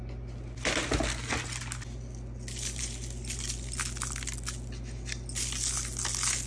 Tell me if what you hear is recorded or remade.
recorded